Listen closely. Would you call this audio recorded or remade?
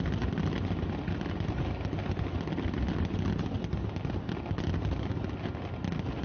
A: recorded